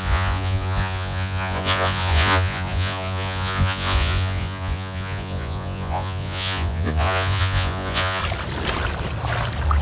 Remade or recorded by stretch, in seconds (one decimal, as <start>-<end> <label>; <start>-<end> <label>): 0.0-8.2 remade; 8.2-9.8 recorded